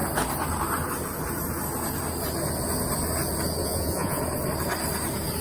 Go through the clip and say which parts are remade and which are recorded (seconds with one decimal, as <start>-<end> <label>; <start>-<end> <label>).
0.0-3.6 recorded; 3.6-4.2 remade; 4.2-5.4 recorded